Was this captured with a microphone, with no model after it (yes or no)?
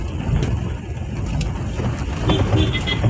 yes